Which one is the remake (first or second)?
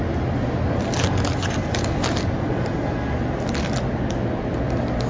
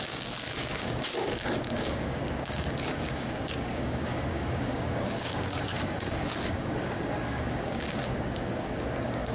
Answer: second